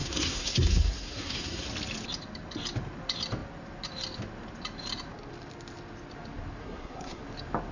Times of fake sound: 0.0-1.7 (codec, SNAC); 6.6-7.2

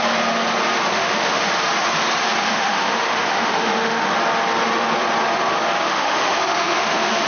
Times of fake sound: 0.9-1.5 (autoencoder, DAC-VAE); 2.4-4.1; 5.8-7.3

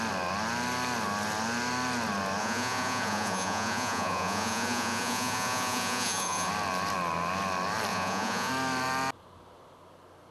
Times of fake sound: 2.4-6.5 (vocoder, Vocos); 7.9-8.5

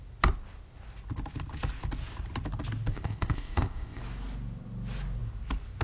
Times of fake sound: 2.9-4.0 (codec, ZipCodec)

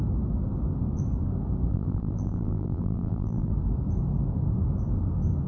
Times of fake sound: 1.7-3.5 (vocoder, BigVGAN v2)